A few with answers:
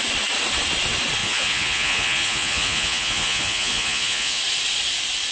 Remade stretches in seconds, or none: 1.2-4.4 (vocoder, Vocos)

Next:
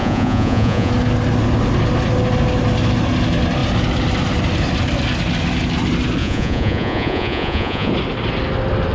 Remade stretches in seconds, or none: 0.0-0.9 (vocoder, Vocos); 6.2-7.9